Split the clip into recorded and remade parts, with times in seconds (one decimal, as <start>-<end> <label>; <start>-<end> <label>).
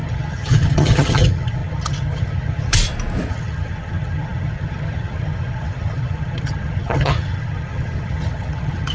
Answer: 0.0-2.7 remade; 2.7-3.3 recorded; 3.3-8.9 remade